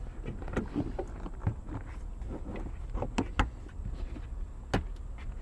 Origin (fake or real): real